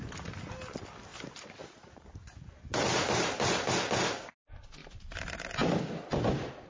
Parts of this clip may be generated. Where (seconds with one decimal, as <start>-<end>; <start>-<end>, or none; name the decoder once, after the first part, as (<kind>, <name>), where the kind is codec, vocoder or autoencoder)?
1.1-3.7 (vocoder, BigVGAN v2); 4.8-5.5